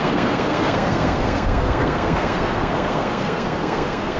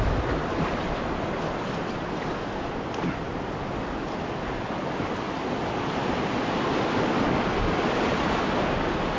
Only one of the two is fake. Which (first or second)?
first